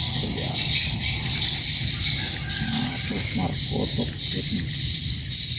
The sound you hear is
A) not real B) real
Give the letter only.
B